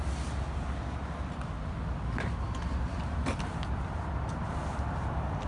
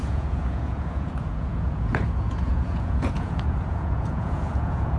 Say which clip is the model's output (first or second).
second